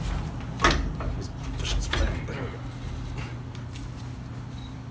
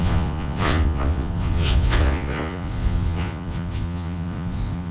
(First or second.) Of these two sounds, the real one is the first